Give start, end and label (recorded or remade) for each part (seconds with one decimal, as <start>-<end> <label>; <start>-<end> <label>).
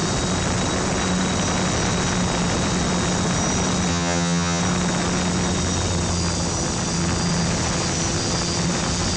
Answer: 0.0-3.9 recorded; 3.9-4.6 remade; 4.6-9.2 recorded